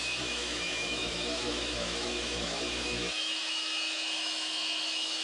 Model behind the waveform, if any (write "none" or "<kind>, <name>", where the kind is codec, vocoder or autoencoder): autoencoder, DAC-VAE